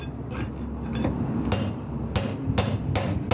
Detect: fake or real real